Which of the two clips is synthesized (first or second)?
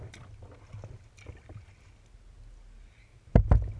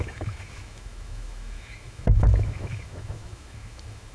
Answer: second